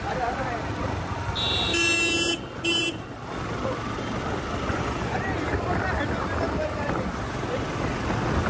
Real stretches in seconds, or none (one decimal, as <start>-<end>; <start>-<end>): 0.0-4.7; 5.2-8.5